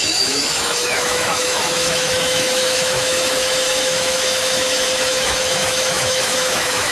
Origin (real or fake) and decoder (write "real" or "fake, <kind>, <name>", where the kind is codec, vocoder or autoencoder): fake, autoencoder, DAC-VAE